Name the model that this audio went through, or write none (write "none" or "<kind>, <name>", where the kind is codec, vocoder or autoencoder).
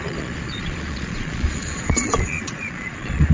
vocoder, Vocos